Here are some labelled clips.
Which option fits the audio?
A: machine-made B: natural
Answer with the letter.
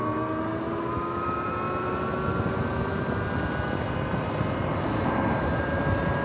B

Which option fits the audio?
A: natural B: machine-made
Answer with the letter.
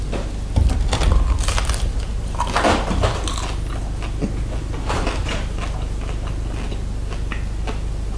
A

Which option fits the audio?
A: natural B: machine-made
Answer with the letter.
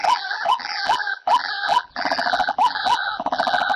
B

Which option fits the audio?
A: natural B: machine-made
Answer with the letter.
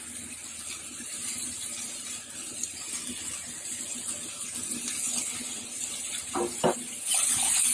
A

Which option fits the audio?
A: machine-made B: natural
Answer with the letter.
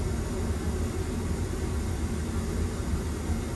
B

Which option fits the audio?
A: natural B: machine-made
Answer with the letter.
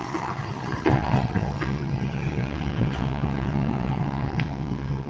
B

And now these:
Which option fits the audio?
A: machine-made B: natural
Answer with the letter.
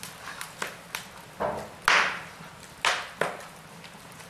B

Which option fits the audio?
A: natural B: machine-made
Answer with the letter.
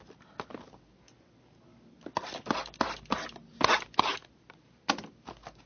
A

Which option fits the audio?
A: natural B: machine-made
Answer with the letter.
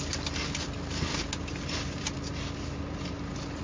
A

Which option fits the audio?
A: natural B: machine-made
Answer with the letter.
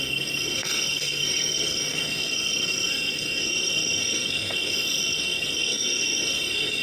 B